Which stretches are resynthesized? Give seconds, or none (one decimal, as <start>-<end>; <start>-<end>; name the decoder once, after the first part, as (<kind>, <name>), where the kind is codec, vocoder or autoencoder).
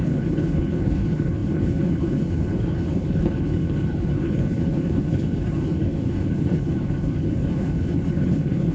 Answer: 0.0-8.7 (codec, HILCodec)